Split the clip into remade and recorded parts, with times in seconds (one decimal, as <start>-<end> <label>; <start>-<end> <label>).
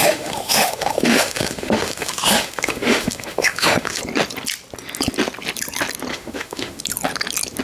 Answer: 0.0-4.0 remade; 4.0-6.1 recorded; 6.1-6.8 remade; 6.8-7.6 recorded